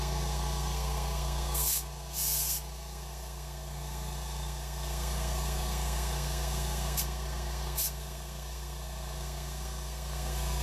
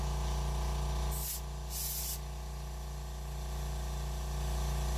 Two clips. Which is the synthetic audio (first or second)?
first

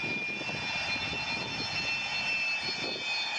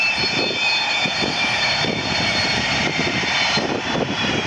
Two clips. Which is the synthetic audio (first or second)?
second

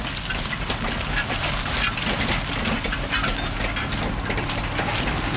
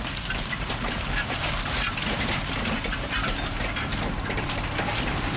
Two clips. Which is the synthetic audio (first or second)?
second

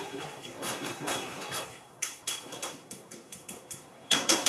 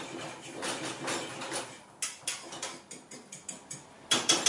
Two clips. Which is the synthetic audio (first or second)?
first